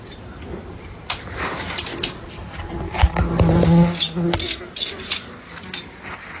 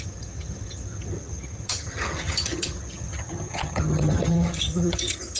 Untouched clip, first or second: first